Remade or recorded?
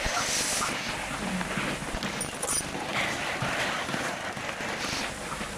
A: recorded